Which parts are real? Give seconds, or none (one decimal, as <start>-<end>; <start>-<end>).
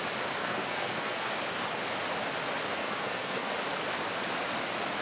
0.0-0.4; 1.3-2.7; 3.5-5.0